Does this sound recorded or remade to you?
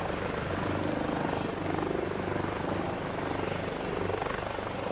recorded